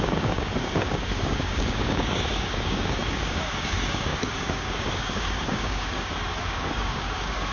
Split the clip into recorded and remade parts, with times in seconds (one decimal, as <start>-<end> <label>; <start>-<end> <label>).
0.0-7.5 remade